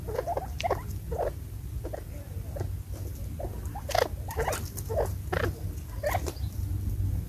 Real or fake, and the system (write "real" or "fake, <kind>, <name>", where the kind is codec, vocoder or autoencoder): real